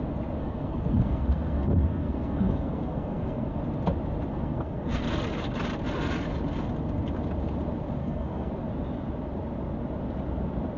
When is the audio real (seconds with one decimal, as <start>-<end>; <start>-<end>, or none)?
0.0-0.4; 3.6-4.3; 5.0-8.0; 8.5-10.8